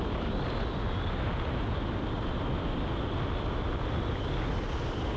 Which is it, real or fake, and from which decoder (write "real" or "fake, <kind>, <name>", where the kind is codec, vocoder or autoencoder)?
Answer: real